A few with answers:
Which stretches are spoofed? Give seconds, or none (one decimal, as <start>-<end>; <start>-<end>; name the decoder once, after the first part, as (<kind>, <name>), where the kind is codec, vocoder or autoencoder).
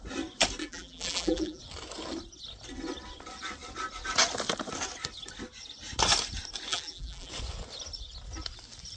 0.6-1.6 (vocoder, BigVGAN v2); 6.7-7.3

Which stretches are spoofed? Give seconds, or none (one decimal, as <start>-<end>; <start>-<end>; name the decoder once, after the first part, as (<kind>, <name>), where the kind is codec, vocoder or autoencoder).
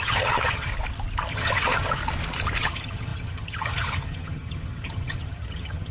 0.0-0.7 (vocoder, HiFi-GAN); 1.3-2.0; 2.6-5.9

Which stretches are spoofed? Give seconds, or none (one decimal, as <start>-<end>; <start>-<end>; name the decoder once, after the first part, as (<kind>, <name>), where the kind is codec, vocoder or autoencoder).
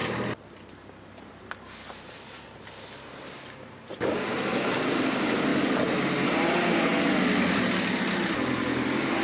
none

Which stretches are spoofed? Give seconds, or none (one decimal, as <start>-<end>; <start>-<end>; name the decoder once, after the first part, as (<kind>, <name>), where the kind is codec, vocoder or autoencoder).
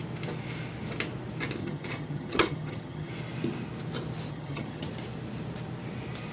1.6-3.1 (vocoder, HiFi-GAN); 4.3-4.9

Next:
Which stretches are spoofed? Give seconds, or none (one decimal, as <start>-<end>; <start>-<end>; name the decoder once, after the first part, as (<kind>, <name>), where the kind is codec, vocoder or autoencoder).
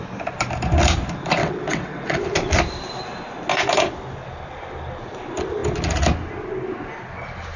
1.4-2.2 (vocoder, WaveNeXt)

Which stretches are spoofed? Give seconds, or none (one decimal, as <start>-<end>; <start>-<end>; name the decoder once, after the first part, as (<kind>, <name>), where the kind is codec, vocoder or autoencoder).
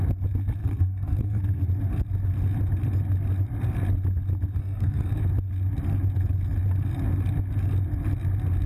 0.6-1.4 (codec, SNAC); 4.6-5.2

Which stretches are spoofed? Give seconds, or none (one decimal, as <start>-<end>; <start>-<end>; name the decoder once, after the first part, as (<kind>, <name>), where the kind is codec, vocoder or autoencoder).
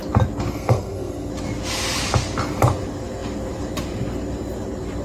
0.5-1.3 (codec, SNAC)